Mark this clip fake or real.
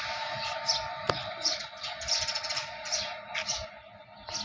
real